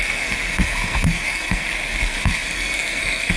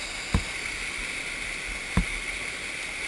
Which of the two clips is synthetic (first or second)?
first